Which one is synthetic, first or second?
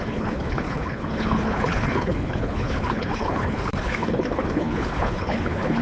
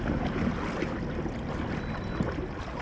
first